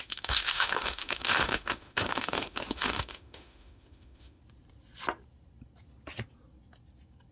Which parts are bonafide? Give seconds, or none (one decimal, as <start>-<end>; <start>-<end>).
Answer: 4.4-7.3

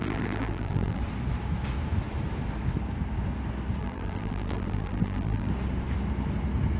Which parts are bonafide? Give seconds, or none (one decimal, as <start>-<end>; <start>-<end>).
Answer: 1.0-3.8; 5.5-6.8